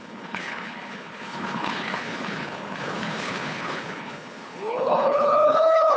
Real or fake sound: fake